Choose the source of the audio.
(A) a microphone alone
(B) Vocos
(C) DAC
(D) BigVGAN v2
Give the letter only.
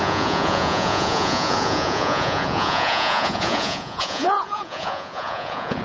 B